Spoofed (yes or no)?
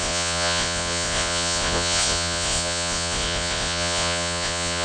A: yes